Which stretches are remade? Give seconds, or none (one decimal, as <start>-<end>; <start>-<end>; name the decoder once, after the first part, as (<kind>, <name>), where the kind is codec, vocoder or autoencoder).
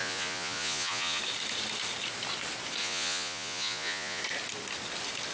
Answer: 0.0-1.2 (vocoder, Vocos); 2.8-4.2